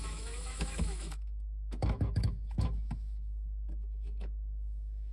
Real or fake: fake